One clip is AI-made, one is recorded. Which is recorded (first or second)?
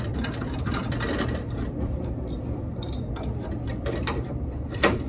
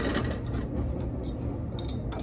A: second